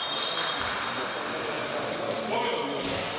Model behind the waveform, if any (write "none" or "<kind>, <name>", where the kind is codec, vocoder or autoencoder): none